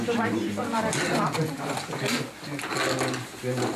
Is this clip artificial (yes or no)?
no